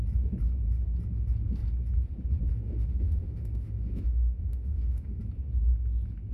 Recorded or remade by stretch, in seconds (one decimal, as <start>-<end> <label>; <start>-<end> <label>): 0.0-2.5 recorded; 2.5-5.2 remade; 5.2-6.3 recorded